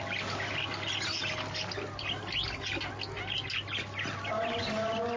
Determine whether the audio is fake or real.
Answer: real